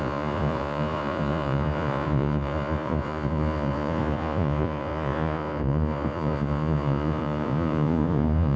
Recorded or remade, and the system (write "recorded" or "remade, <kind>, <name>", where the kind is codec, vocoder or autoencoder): remade, vocoder, Vocos